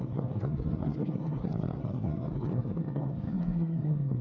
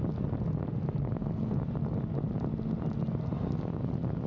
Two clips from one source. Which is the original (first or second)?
second